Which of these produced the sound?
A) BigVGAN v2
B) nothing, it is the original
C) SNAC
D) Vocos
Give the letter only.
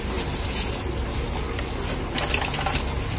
B